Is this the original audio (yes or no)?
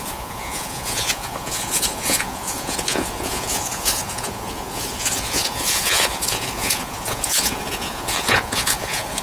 no